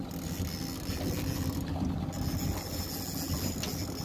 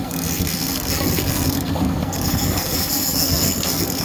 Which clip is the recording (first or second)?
first